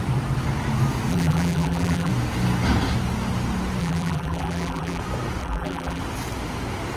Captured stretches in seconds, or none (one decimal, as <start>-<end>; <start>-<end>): 0.0-1.1; 2.1-3.8; 5.0-5.4; 6.0-7.0